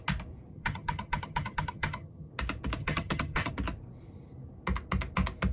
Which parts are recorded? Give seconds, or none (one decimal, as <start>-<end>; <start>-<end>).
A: 0.0-0.5; 2.3-2.8; 3.5-5.5